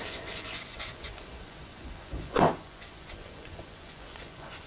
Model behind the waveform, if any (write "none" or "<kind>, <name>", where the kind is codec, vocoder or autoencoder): vocoder, Vocos